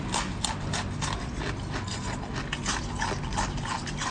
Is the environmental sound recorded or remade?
recorded